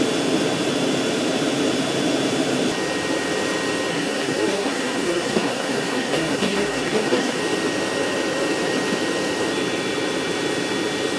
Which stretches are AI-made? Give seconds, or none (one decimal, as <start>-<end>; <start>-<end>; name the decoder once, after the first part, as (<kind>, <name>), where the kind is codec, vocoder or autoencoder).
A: 3.9-7.4 (codec, SNAC)